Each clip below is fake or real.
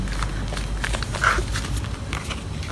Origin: real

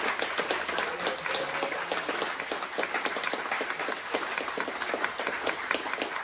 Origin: real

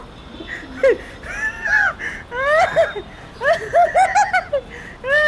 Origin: real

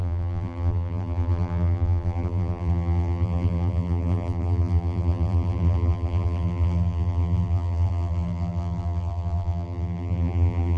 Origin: fake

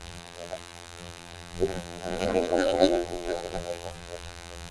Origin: fake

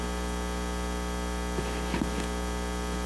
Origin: real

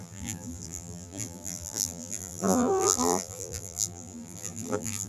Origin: fake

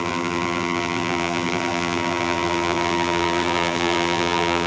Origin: fake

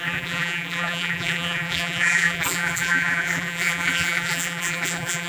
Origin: fake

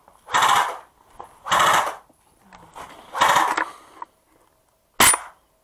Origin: real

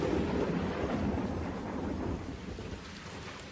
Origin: fake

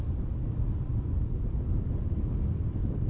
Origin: fake